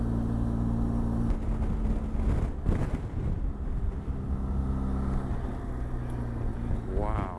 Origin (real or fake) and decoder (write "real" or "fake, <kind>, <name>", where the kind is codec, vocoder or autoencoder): real